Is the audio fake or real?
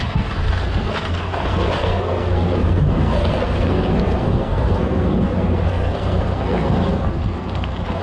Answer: fake